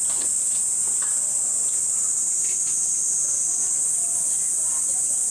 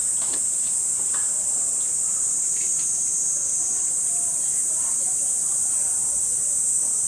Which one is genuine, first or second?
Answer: first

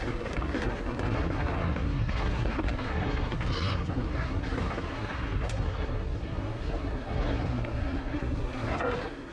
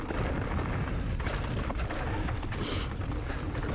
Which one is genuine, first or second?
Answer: second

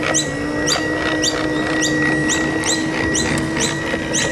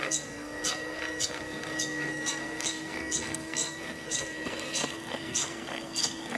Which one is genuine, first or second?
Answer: first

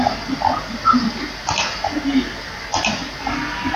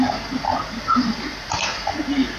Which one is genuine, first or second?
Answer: first